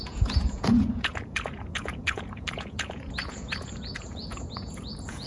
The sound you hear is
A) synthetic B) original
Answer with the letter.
A